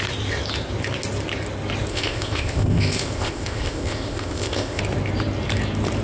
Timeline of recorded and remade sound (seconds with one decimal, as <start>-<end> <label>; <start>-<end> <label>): 0.0-1.9 recorded; 1.9-4.8 remade; 4.8-6.0 recorded